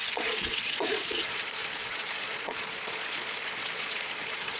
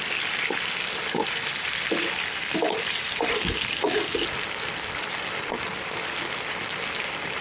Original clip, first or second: second